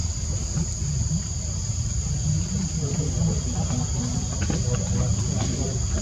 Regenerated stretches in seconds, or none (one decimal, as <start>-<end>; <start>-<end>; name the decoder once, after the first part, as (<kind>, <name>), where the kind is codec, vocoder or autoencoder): none